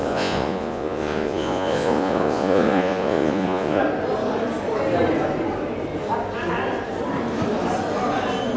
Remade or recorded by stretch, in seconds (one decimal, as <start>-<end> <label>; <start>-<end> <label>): 0.0-3.8 remade; 3.8-8.6 recorded